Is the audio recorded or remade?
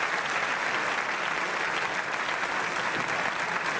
recorded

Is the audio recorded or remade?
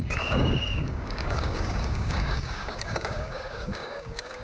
remade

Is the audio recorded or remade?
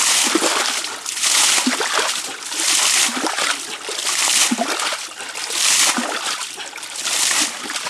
recorded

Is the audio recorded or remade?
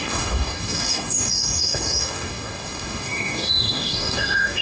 remade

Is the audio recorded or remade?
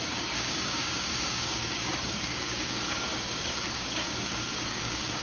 remade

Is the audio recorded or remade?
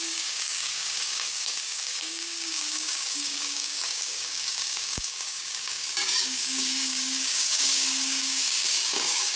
remade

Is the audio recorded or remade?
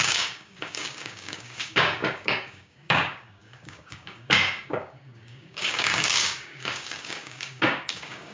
remade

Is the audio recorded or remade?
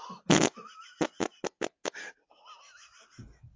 recorded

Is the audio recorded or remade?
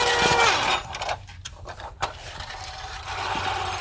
recorded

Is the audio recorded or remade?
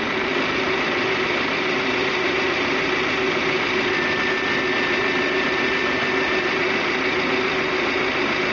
recorded